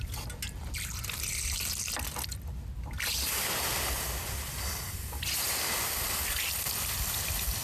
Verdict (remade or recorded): recorded